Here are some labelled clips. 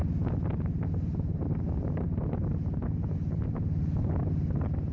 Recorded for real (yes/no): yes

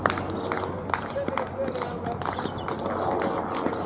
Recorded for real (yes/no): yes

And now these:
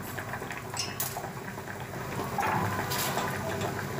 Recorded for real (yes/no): yes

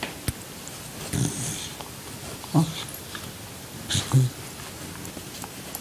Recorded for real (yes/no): yes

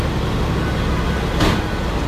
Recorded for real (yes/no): yes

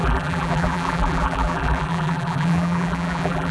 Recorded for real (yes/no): no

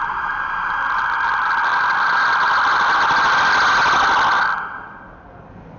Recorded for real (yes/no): no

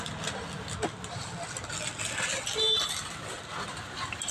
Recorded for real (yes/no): yes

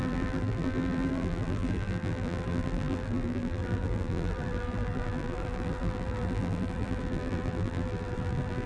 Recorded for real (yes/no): no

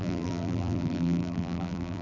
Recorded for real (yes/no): no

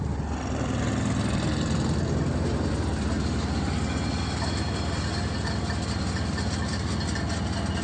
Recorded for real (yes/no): yes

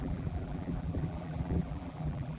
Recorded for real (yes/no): no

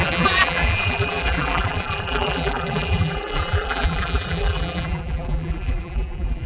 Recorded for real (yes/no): no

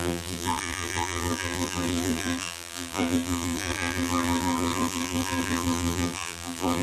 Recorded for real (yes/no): no